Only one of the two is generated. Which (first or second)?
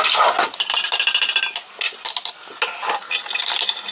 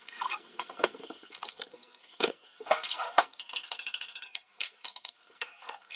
second